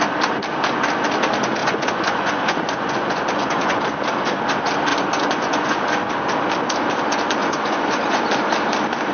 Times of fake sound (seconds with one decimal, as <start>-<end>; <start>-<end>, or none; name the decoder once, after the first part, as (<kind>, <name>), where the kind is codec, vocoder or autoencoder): 1.6-3.8 (vocoder, Vocos); 4.9-6.1; 7.4-8.2